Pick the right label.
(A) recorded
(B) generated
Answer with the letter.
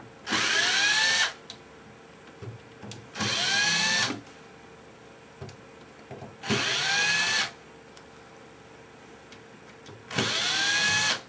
A